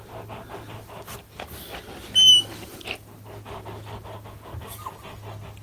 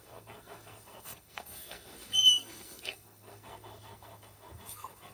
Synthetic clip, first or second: second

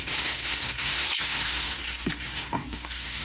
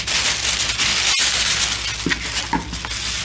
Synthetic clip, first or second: first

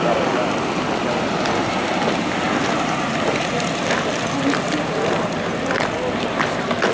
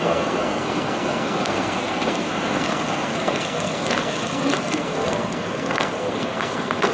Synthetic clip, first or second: second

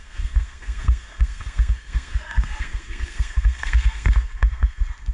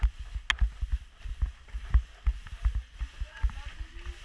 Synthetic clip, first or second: first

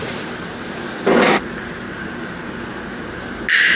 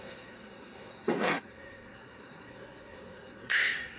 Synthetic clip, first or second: second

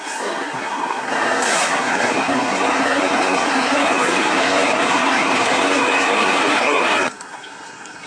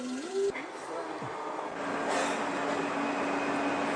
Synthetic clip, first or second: first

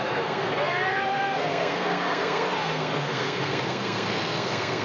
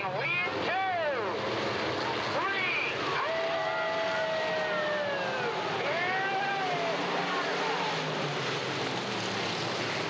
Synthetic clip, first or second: first